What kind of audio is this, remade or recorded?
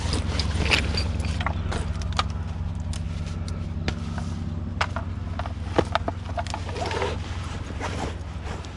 recorded